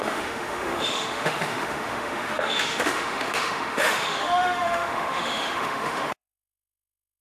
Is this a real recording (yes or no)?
no